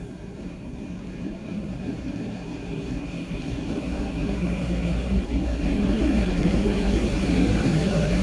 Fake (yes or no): yes